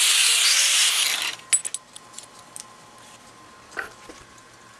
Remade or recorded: recorded